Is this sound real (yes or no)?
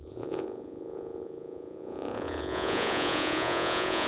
no